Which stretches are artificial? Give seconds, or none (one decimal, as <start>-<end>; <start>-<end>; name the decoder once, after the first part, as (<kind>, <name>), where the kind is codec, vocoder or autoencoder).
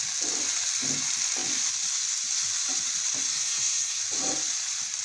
3.3-4.0 (codec, SNAC)